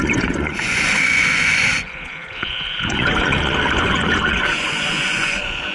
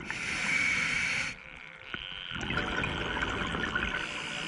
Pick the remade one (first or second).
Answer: first